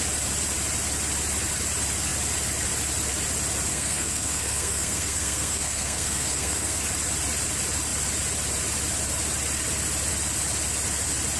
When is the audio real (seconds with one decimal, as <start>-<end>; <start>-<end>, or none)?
0.0-3.7; 6.8-11.4